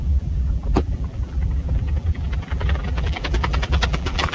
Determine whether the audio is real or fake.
fake